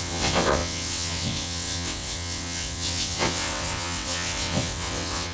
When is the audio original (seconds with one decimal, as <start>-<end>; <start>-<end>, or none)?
none